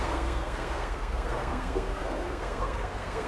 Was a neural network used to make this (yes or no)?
yes